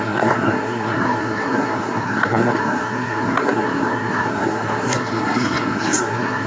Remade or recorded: remade